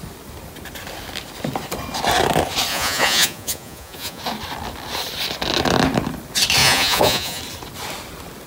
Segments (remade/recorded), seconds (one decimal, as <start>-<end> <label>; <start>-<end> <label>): 0.0-2.7 recorded; 2.7-4.2 remade; 4.2-6.6 recorded; 6.6-7.4 remade; 7.4-8.5 recorded